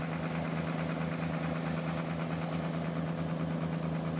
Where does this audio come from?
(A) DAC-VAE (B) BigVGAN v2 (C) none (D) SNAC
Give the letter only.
C